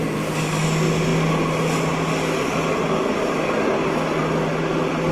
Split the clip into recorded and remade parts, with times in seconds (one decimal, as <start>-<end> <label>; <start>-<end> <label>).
0.0-5.1 recorded